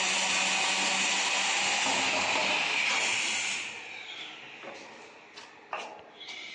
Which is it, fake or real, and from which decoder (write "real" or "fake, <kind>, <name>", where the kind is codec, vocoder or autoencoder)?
real